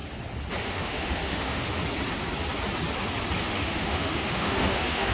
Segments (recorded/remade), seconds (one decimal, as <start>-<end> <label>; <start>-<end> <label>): 0.0-0.6 recorded; 0.6-1.8 remade; 1.8-3.4 recorded; 3.4-5.1 remade